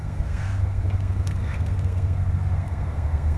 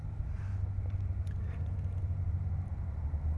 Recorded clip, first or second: second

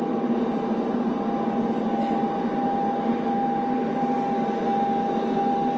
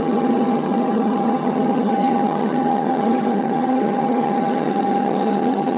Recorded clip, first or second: first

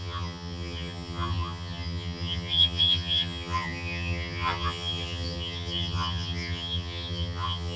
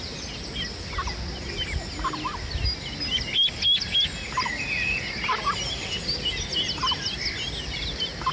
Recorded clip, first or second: second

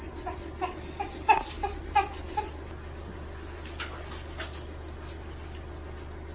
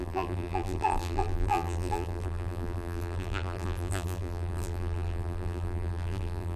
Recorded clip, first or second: first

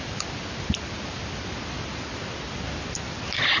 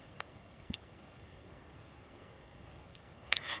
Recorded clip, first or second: first